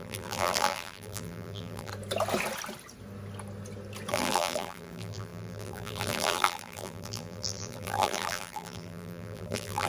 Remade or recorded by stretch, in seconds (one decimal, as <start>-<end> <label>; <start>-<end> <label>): 0.0-1.9 remade; 1.9-4.1 recorded; 4.1-9.9 remade